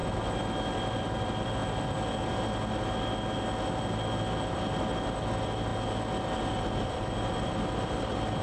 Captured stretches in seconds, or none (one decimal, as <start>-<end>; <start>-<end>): 0.0-1.0; 1.6-4.5; 5.7-6.4